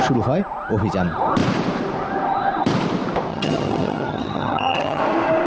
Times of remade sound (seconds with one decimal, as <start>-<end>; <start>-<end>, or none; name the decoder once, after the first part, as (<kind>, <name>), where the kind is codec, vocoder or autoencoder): 3.3-5.0 (vocoder, HiFi-GAN)